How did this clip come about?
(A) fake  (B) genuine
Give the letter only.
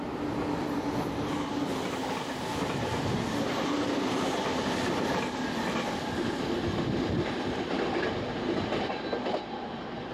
B